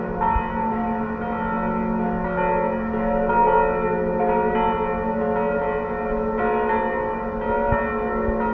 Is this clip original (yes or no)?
yes